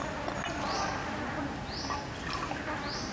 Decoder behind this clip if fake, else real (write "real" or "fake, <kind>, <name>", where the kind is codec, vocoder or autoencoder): real